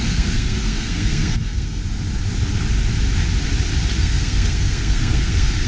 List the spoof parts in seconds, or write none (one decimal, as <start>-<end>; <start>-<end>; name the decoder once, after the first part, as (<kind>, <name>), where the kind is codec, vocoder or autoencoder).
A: 0.0-1.8 (codec, SNAC); 4.0-5.7